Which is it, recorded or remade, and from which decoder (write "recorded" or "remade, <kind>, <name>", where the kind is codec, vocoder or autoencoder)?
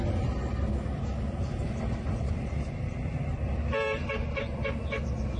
remade, vocoder, BigVGAN v2